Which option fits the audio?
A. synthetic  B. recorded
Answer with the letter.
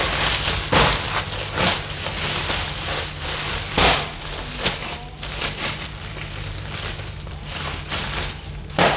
B